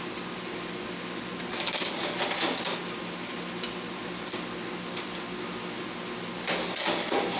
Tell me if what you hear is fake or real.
real